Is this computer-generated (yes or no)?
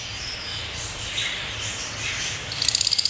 no